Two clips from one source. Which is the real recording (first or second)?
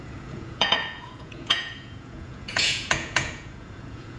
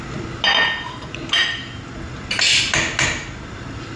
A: second